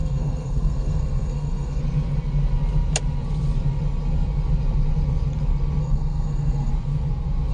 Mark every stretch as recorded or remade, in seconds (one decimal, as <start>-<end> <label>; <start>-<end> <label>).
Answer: 0.0-1.8 remade; 1.8-5.8 recorded; 5.8-6.7 remade; 6.7-7.5 recorded